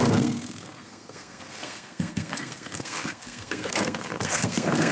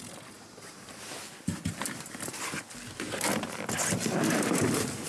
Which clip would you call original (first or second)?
second